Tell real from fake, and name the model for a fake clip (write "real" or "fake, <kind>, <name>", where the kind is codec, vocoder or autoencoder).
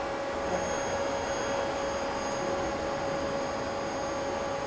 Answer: real